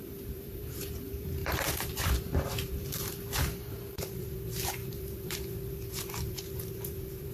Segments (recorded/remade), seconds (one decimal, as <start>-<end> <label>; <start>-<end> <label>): 0.0-7.3 remade